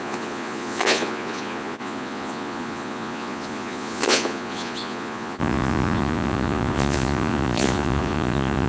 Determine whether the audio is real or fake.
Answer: fake